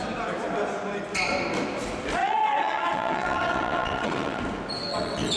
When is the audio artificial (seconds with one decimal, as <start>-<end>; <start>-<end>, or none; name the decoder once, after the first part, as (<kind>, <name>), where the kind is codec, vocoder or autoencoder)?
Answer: 2.2-4.4 (vocoder, WaveNeXt); 4.9-5.4

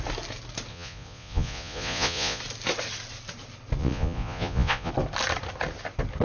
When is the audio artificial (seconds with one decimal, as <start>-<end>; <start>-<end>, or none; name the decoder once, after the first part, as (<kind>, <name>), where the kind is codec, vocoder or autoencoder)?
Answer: 0.7-2.4 (vocoder, Vocos); 3.8-4.9

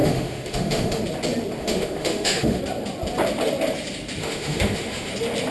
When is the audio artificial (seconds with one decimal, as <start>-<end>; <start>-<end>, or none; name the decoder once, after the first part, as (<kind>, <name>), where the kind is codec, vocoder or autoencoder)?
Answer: 0.0-1.0 (autoencoder, DAC-VAE); 1.6-2.6; 4.2-5.1

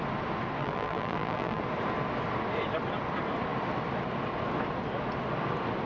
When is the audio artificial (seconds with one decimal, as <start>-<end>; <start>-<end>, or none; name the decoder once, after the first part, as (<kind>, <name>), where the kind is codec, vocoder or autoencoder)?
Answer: 0.6-1.6 (vocoder, BigVGAN v2)

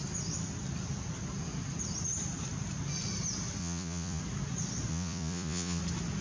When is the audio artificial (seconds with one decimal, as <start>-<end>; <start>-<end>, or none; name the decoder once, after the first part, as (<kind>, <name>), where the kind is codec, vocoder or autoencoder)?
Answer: 3.6-4.2 (vocoder, Vocos); 4.9-5.8